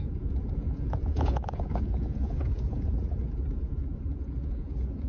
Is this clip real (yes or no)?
no